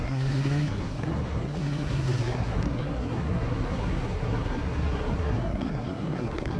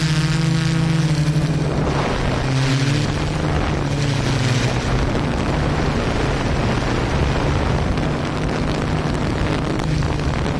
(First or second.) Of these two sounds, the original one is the second